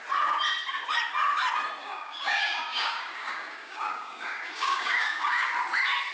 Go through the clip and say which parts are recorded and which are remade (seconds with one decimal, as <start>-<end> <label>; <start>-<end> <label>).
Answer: 0.0-1.8 recorded; 1.8-5.5 remade; 5.5-6.1 recorded